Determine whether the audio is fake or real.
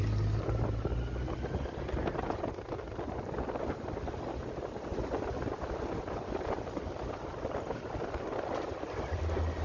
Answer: real